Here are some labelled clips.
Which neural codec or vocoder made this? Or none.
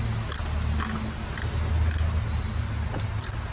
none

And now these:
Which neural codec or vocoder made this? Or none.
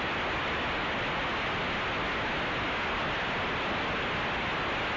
none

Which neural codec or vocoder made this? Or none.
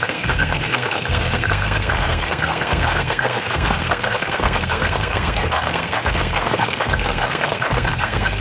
codec, SNAC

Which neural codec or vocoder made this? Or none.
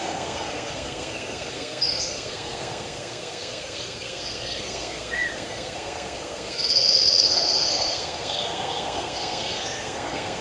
codec, SNAC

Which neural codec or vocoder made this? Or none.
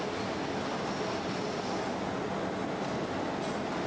none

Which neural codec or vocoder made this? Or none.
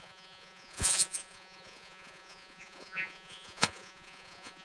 vocoder, Vocos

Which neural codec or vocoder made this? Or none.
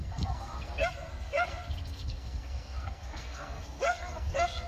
codec, SNAC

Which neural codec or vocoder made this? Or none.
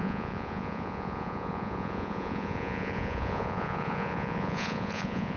vocoder, Vocos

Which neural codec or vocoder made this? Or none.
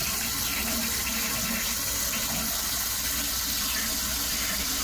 none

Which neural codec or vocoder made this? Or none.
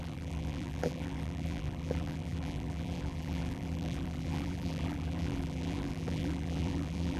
vocoder, BigVGAN v2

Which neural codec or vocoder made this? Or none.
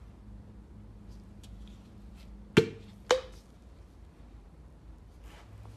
none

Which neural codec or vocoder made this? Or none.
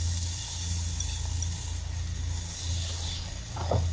none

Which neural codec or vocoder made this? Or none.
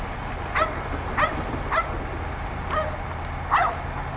none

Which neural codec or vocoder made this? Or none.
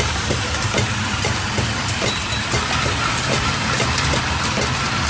none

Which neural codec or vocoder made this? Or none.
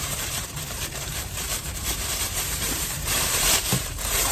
vocoder, BigVGAN v2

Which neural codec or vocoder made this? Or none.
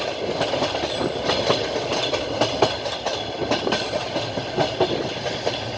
none